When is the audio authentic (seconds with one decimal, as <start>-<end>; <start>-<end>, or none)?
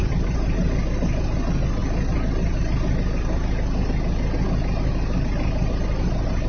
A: 0.7-6.5